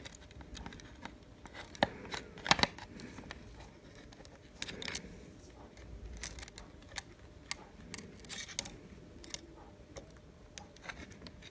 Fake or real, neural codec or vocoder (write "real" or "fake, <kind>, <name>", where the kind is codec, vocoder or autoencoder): real